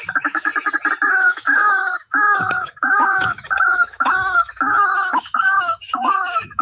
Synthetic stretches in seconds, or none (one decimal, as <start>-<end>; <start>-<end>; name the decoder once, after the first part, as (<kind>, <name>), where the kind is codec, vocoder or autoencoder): 0.0-0.5 (autoencoder, DAC-VAE); 1.1-6.6